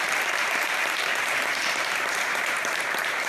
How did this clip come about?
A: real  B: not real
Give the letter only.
B